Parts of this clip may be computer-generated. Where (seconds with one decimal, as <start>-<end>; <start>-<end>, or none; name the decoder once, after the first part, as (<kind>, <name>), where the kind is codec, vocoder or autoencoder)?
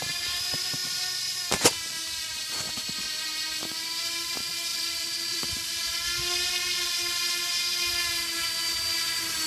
4.7-5.4 (vocoder, BigVGAN v2)